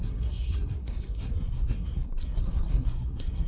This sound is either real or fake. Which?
fake